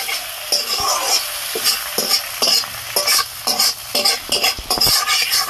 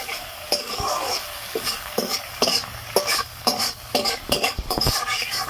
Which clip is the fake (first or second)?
second